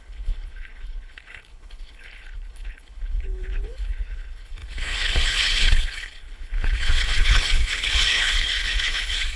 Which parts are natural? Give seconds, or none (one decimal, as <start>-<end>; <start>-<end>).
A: none